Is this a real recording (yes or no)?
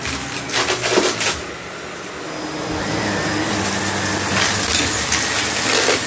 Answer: yes